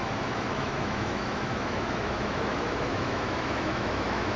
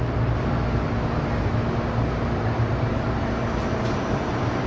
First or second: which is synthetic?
first